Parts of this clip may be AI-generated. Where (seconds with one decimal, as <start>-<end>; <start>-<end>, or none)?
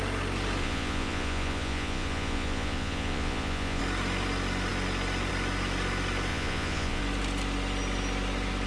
0.6-3.8; 6.3-7.0